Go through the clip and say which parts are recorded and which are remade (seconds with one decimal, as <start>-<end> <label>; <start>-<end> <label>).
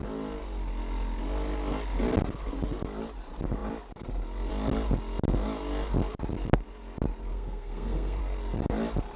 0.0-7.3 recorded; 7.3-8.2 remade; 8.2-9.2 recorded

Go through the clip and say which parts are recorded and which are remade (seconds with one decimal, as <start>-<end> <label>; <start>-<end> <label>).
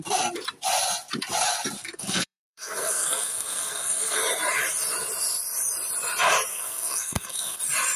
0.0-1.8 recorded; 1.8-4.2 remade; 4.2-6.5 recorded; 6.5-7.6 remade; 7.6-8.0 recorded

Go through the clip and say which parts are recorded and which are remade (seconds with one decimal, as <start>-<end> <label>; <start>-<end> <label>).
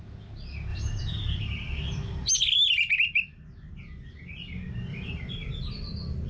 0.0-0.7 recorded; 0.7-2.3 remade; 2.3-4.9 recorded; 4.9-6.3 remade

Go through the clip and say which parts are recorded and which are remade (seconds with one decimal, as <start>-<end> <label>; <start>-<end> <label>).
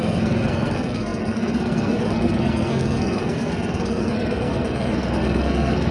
0.0-5.9 remade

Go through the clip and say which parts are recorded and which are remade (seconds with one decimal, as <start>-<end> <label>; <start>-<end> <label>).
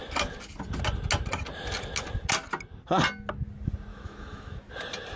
0.0-3.9 recorded; 3.9-4.7 remade; 4.7-5.2 recorded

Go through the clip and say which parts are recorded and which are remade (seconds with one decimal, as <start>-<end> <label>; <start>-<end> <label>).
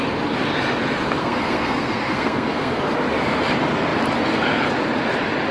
0.0-1.2 recorded; 1.2-2.8 remade; 2.8-5.5 recorded